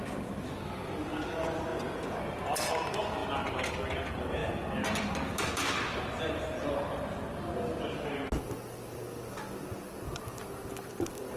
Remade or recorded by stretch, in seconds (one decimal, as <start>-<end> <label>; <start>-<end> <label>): 0.0-11.4 recorded